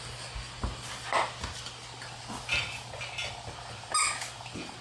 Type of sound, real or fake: real